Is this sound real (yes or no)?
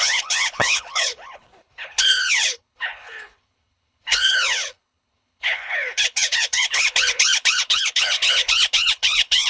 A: no